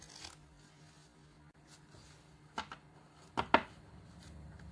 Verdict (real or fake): real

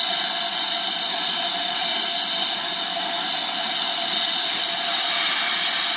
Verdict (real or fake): real